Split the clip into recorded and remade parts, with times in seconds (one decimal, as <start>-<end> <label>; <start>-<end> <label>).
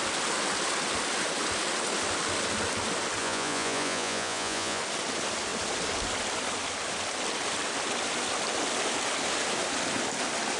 0.0-3.2 recorded; 3.2-4.8 remade; 4.8-10.6 recorded